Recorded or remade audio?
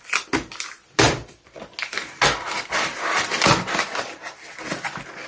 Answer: recorded